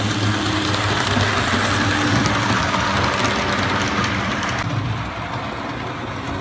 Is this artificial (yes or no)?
no